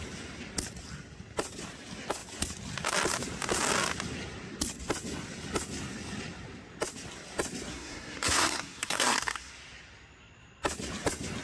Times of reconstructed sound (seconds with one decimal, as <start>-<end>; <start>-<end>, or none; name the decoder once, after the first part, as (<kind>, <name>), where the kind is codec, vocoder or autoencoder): 7.7-9.5 (codec, SNAC)